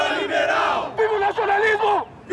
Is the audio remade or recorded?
recorded